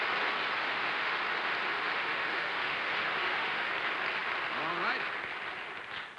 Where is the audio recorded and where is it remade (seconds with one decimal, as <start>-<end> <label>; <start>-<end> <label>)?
0.0-0.6 recorded; 0.6-1.2 remade; 1.2-1.7 recorded; 1.7-3.7 remade; 3.7-6.2 recorded